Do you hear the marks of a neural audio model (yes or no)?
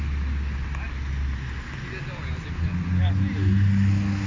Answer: no